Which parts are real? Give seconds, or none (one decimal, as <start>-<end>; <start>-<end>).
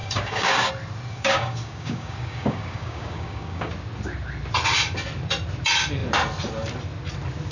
0.7-1.1; 3.7-7.5